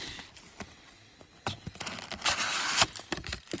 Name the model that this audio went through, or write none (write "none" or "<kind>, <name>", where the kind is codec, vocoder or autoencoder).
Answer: none